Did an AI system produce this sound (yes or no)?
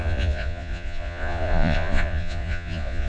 yes